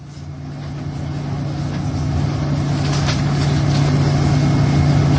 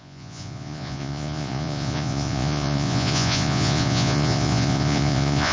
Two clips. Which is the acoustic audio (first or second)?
first